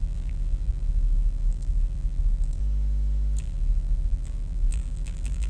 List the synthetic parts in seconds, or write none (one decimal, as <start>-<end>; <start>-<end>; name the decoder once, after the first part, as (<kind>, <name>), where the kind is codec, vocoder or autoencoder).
0.0-2.6 (vocoder, BigVGAN v2); 3.4-5.5

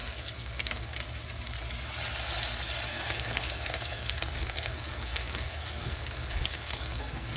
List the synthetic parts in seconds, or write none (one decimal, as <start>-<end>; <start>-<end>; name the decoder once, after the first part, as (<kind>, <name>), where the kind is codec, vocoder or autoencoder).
0.0-1.0 (codec, SNAC); 2.9-7.4